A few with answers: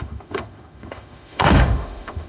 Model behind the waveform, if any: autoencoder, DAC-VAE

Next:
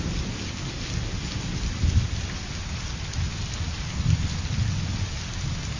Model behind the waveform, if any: none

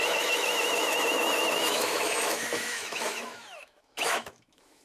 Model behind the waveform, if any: autoencoder, DAC-VAE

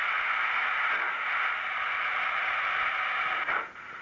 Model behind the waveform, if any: none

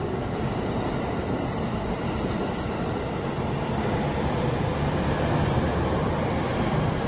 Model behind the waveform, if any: none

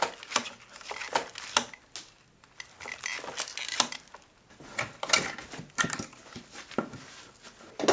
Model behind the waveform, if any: none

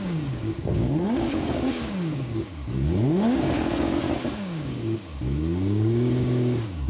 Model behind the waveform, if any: codec, DAC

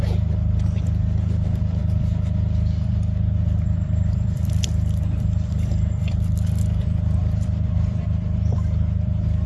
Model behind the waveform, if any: vocoder, BigVGAN v2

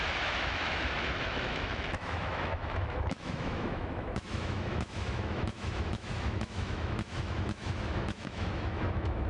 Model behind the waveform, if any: autoencoder, DAC-VAE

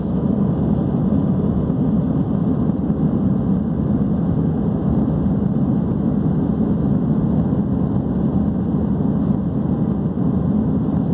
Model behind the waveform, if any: none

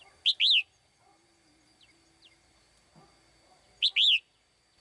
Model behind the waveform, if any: none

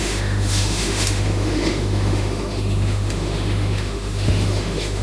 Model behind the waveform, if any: autoencoder, DAC-VAE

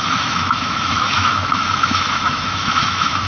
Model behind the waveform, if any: autoencoder, DAC-VAE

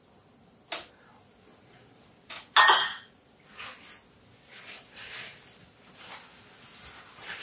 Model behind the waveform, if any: none